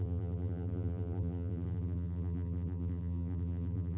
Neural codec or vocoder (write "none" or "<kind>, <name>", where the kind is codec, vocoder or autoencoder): vocoder, BigVGAN v2